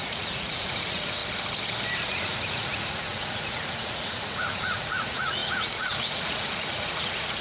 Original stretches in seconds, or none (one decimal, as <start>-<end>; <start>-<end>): 1.2-2.1